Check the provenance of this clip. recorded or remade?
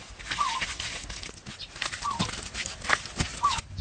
recorded